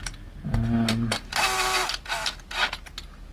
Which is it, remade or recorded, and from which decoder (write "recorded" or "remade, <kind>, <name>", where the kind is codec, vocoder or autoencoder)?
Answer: recorded